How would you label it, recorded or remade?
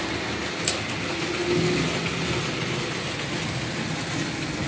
recorded